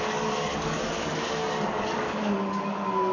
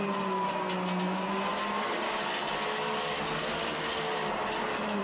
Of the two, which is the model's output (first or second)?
first